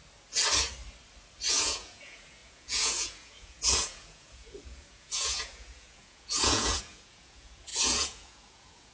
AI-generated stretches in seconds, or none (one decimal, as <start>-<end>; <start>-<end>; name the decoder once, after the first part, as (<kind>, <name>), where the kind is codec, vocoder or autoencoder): 1.5-8.9 (vocoder, Vocos)